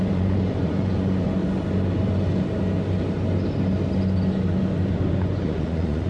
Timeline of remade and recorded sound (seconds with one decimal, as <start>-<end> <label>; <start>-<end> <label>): 0.0-1.4 remade; 1.4-5.1 recorded; 5.1-6.1 remade